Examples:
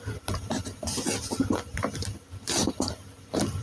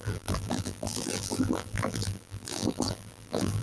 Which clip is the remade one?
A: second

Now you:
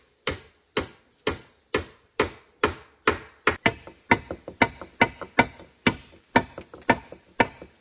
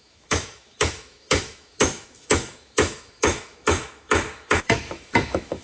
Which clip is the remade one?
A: second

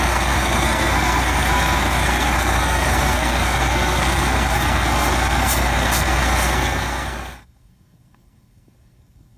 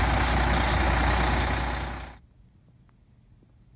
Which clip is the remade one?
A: first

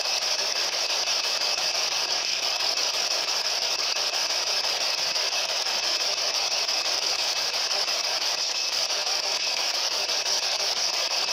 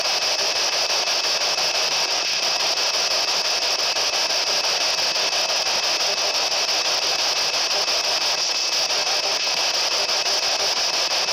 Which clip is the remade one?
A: first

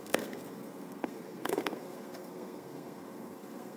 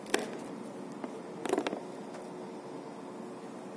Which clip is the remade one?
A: first